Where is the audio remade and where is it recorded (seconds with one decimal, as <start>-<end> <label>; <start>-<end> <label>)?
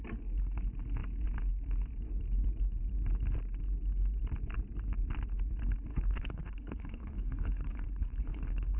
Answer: 0.0-5.9 recorded; 5.9-8.8 remade